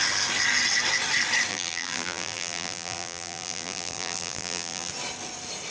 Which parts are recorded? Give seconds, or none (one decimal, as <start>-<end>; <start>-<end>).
0.0-1.5; 4.9-5.7

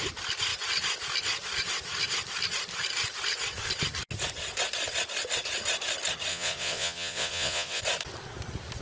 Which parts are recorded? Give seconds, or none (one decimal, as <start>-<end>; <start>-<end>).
0.0-6.3; 7.8-8.8